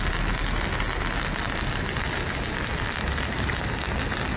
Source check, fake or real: real